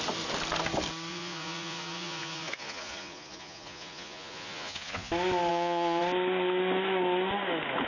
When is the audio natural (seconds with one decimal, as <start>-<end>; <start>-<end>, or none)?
0.0-1.1; 5.1-5.5; 6.0-7.9